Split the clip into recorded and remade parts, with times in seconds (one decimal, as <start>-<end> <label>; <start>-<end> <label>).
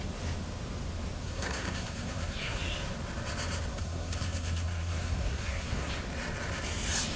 0.0-1.2 recorded; 1.2-2.6 remade; 2.6-3.7 recorded; 3.7-5.9 remade; 5.9-7.2 recorded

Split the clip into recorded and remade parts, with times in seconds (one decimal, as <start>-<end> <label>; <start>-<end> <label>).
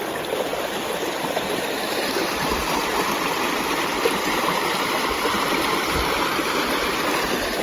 0.0-2.8 remade; 2.8-4.2 recorded; 4.2-7.6 remade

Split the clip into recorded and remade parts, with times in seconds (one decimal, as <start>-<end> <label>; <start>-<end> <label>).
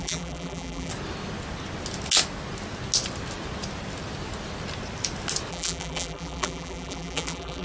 0.0-0.9 remade; 0.9-5.5 recorded; 5.5-7.6 remade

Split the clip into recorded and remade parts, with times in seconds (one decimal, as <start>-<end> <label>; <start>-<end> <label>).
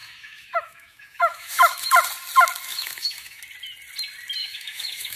0.0-1.9 remade; 1.9-2.7 recorded; 2.7-3.4 remade; 3.4-4.4 recorded; 4.4-5.2 remade